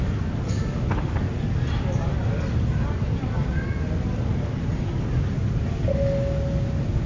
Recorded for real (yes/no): yes